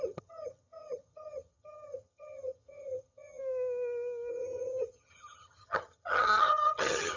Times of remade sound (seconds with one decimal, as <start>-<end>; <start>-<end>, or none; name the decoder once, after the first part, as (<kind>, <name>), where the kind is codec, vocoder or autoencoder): 0.0-3.4 (vocoder, HiFi-GAN); 4.3-7.2